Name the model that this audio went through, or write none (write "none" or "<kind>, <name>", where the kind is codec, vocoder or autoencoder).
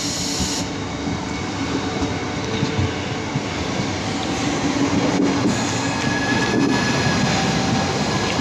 none